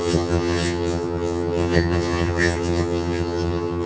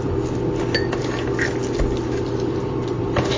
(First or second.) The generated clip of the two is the first